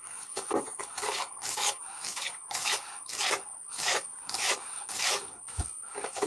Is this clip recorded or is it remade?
remade